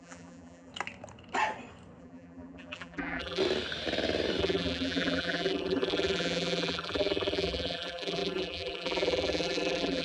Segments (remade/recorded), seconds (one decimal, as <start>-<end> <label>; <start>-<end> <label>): 0.0-0.7 remade; 0.7-2.0 recorded; 2.0-3.4 remade; 3.4-4.4 recorded; 4.4-10.0 remade